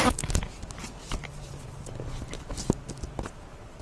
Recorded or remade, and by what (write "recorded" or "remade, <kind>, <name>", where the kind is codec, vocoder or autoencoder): recorded